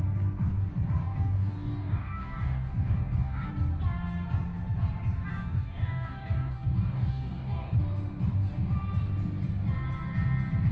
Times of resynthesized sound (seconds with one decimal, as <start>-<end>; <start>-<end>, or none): 1.0-3.5; 5.3-7.8